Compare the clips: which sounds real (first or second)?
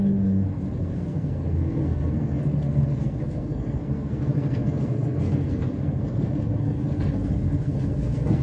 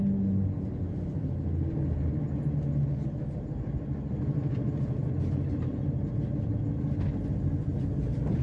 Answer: second